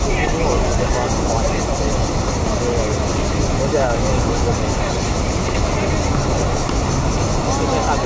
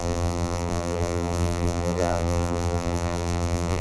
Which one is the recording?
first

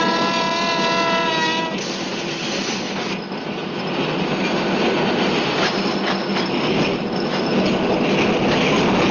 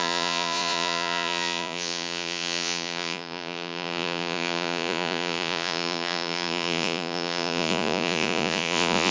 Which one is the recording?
first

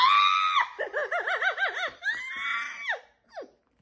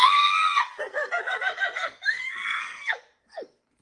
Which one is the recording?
first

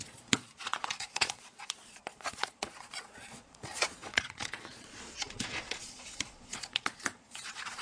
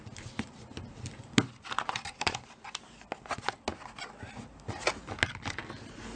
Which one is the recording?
second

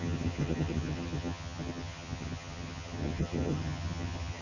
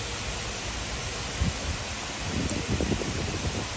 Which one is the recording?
second